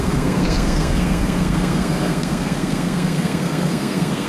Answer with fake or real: fake